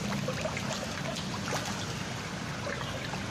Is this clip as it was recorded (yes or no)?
yes